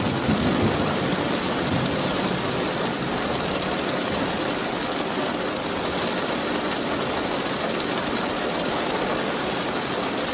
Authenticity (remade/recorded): recorded